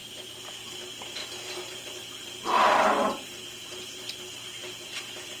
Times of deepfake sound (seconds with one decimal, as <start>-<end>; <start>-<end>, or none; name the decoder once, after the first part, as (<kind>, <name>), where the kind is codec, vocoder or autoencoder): none